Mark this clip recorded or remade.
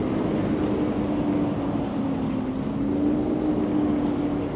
recorded